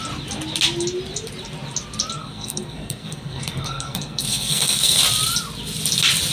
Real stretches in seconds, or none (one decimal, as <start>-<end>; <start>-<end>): 0.0-2.2; 5.0-6.3